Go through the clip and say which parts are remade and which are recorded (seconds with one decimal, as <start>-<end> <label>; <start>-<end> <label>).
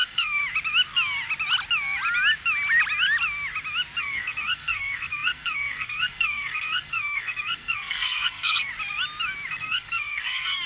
0.0-0.4 remade; 0.4-4.0 recorded; 4.0-8.7 remade; 8.7-9.5 recorded; 9.5-10.7 remade